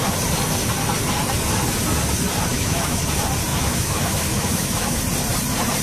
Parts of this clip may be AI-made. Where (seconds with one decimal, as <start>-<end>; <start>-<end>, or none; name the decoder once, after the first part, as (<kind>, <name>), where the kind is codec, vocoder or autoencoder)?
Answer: 2.5-3.0 (autoencoder, DAC-VAE); 3.5-5.0